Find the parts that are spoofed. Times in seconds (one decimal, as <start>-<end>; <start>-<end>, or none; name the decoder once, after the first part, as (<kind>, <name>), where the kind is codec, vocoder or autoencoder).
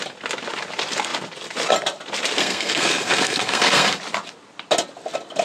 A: 2.4-4.0 (codec, SNAC)